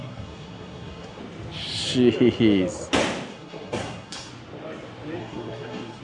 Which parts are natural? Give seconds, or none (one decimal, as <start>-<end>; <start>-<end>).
1.2-3.3; 4.3-5.2

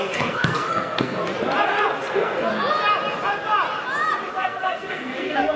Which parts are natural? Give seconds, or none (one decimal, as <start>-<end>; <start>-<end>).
1.2-2.1; 2.5-4.3

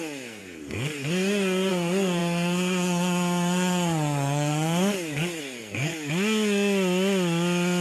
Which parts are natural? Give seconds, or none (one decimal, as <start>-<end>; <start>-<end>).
5.9-7.8

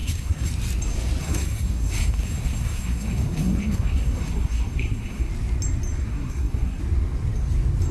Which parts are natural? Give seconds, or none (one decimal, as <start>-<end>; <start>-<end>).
0.5-1.2; 5.3-6.0; 6.8-7.9

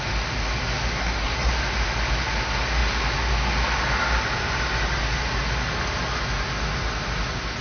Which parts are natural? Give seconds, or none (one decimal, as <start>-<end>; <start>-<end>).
0.0-0.9; 1.5-7.6

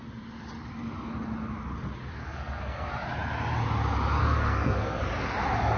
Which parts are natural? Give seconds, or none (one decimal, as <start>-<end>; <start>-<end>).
0.0-2.2; 2.9-4.2; 5.0-5.8

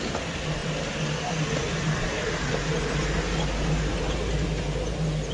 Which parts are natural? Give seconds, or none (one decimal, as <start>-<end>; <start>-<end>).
0.0-5.3

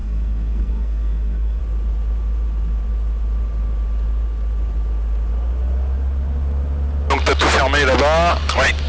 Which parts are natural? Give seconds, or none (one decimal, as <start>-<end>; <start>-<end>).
1.6-8.9